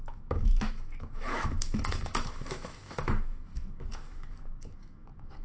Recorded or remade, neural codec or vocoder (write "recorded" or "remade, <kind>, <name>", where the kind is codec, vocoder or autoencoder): remade, autoencoder, DAC-VAE